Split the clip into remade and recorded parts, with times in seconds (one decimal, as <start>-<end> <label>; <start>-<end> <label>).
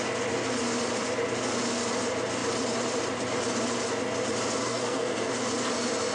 0.0-4.6 recorded; 4.6-5.3 remade; 5.3-6.1 recorded